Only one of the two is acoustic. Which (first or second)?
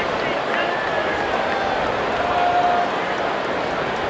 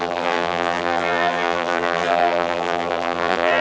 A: first